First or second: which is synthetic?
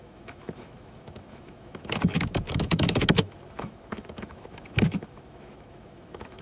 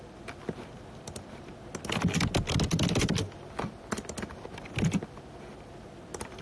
first